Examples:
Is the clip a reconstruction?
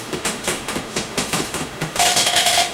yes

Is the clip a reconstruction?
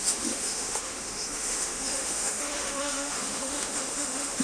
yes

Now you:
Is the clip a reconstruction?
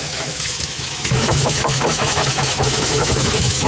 yes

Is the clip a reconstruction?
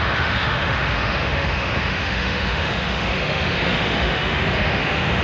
yes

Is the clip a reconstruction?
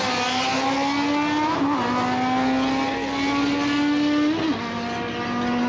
no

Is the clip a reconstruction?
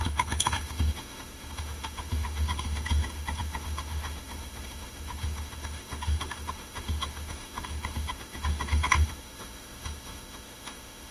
yes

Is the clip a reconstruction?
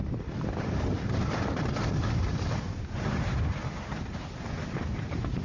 no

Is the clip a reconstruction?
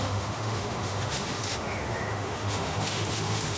yes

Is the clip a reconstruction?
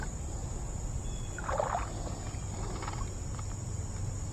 no